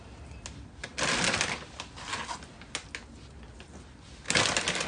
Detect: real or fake real